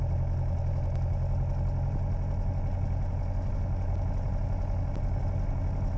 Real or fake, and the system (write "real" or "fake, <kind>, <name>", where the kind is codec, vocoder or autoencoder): real